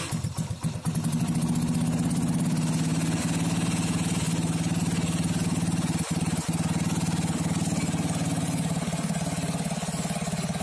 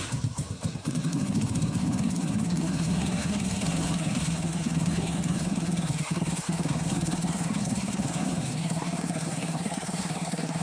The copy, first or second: second